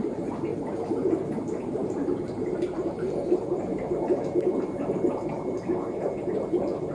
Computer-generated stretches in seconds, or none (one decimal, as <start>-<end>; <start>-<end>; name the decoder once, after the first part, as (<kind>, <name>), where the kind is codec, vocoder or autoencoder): 0.0-0.5 (vocoder, BigVGAN v2); 1.4-6.9